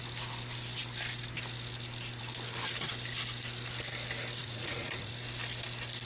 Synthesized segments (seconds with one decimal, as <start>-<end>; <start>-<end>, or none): 4.4-5.1